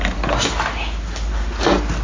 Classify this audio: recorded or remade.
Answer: recorded